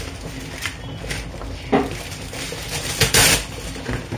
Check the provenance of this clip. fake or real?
real